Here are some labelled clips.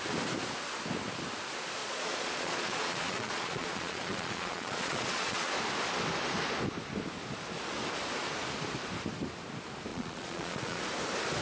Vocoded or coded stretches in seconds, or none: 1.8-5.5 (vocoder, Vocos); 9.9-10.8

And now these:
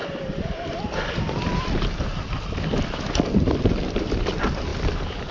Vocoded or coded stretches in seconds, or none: none

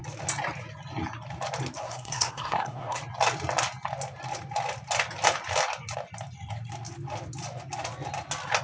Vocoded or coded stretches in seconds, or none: 1.8-3.0 (codec, SNAC)

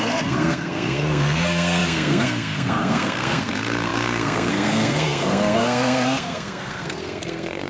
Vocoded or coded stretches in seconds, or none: 0.0-7.7 (codec, SNAC)

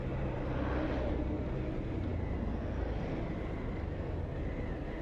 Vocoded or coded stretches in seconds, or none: none

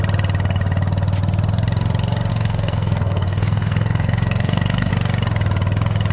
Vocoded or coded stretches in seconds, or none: 2.3-4.9 (codec, SNAC)

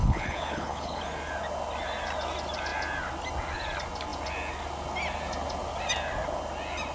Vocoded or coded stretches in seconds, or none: 0.0-1.0 (codec, HILCodec)

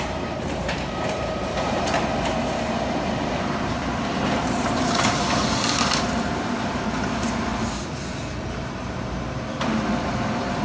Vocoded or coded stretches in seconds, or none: 0.0-7.5 (vocoder, BigVGAN v2); 8.4-10.6